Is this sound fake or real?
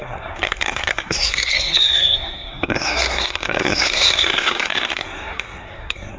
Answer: fake